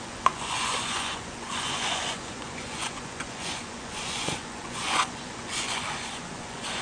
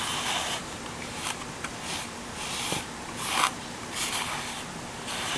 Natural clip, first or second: second